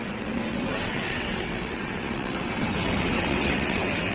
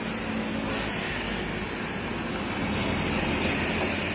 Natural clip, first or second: second